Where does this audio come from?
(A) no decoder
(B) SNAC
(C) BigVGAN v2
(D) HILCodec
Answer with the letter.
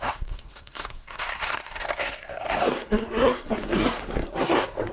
B